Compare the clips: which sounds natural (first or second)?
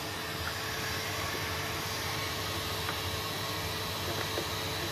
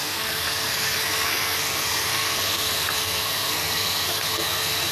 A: first